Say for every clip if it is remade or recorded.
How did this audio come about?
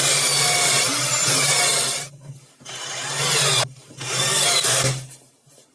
recorded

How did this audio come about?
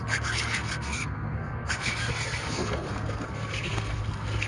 remade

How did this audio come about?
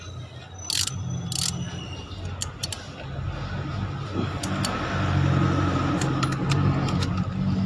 recorded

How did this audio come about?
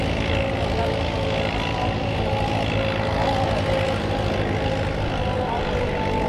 recorded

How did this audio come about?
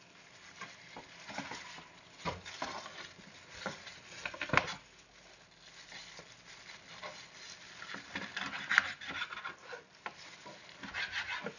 recorded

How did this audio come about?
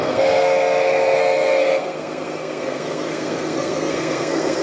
remade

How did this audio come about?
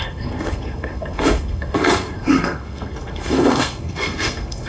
remade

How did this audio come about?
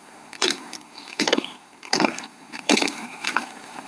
remade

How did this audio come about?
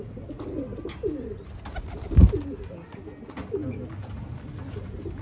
recorded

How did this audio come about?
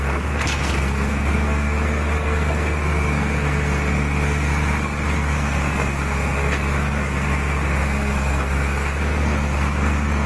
remade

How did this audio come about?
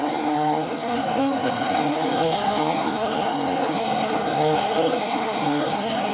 remade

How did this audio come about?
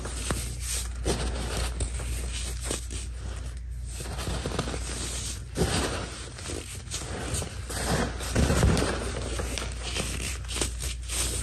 recorded